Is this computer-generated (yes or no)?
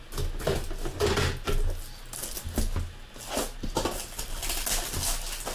no